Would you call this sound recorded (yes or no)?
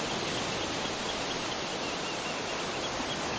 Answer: yes